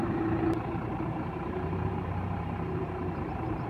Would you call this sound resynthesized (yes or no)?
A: yes